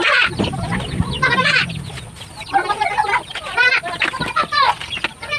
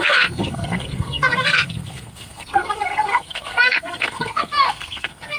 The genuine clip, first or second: first